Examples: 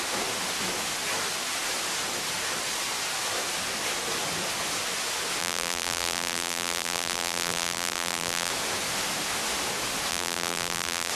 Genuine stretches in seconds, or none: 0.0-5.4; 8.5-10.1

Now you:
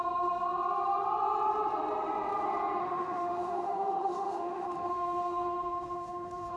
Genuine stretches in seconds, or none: 0.0-2.8

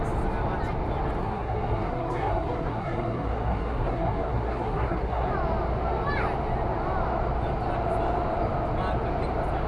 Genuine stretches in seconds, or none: 0.0-1.2; 5.3-9.7

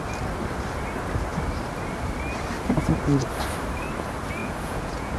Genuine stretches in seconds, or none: 0.0-4.4

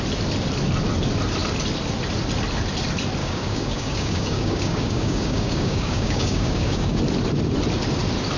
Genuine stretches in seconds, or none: 0.0-3.2; 7.0-8.4